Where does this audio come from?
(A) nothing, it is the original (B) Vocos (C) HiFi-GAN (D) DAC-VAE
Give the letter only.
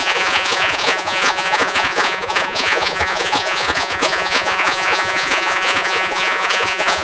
B